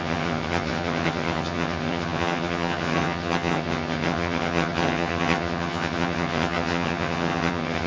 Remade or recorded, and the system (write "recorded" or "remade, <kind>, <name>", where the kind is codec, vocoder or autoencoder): remade, vocoder, HiFi-GAN